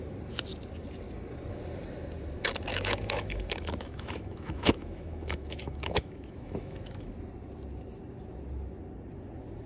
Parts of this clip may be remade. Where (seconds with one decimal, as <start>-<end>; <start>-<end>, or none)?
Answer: 2.7-7.1

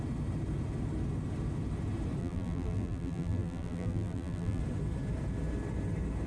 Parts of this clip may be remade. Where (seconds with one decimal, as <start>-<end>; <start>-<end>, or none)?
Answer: 2.2-4.6

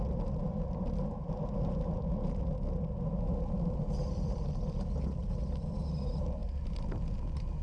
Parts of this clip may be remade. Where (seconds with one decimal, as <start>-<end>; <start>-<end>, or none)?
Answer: none